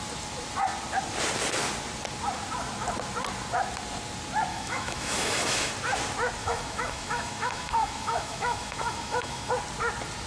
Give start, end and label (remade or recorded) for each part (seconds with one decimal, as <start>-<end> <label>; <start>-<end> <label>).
0.0-4.5 recorded; 4.5-5.7 remade; 5.7-6.4 recorded; 6.4-9.5 remade; 9.5-10.3 recorded